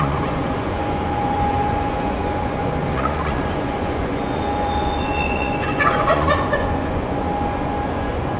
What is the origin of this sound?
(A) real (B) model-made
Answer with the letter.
B